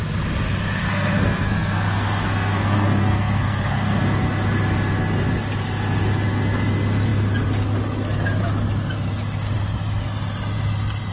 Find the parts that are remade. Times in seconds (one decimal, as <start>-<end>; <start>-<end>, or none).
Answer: 0.8-4.0